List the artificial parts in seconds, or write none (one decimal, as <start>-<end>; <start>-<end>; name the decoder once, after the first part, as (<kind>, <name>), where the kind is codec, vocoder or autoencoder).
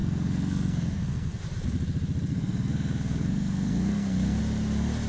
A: 0.0-1.4 (codec, SNAC); 2.3-4.4